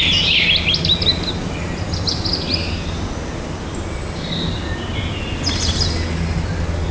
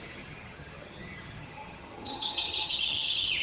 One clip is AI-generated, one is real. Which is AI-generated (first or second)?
second